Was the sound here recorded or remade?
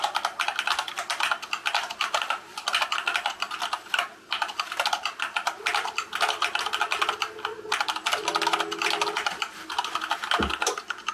recorded